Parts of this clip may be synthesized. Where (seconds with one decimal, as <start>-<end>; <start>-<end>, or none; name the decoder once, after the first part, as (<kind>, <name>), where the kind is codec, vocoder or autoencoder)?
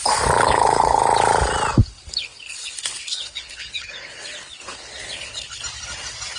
0.4-1.0 (codec, HILCodec); 1.8-5.6